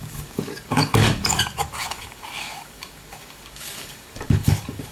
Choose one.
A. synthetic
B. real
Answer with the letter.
A